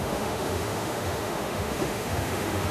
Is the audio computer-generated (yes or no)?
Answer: yes